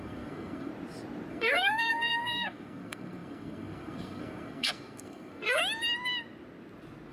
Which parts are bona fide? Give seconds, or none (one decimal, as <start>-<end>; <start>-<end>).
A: 0.7-1.3; 5.6-7.1